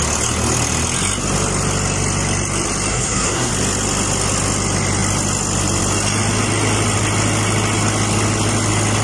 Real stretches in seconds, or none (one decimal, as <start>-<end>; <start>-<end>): 0.0-2.9; 3.5-9.0